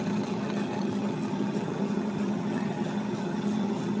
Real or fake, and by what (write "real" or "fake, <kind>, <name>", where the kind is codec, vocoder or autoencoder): fake, vocoder, HiFi-GAN